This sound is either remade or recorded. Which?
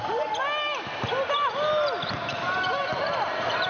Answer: recorded